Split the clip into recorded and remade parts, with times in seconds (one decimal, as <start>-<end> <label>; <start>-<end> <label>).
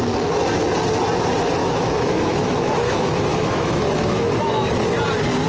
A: 0.0-1.6 recorded; 1.6-4.7 remade; 4.7-5.5 recorded